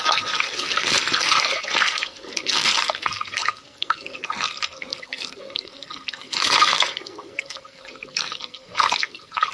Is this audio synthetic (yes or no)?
yes